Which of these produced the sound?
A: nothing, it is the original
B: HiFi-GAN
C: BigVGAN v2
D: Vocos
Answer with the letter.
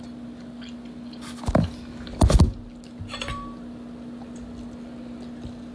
A